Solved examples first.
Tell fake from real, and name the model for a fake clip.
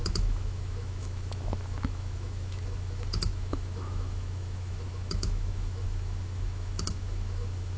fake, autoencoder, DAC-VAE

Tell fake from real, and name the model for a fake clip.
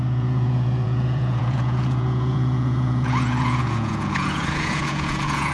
fake, vocoder, Vocos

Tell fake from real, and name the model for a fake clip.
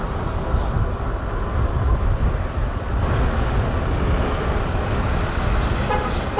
real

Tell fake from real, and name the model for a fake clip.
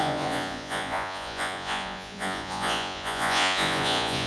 fake, vocoder, Vocos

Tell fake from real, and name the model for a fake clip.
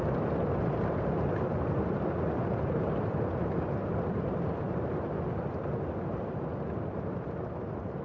real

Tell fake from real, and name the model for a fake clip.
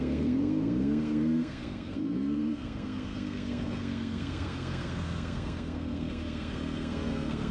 fake, codec, SNAC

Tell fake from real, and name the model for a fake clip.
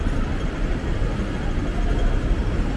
real